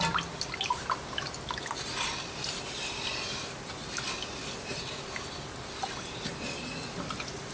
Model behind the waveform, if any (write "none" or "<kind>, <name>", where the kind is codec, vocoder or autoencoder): none